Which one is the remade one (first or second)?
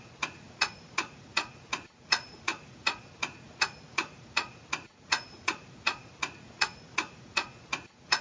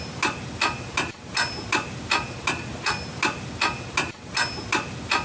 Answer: first